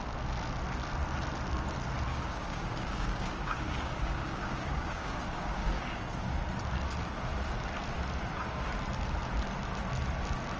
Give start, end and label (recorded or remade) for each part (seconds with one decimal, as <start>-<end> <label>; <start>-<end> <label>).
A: 0.0-2.1 recorded; 2.1-6.4 remade; 6.4-10.6 recorded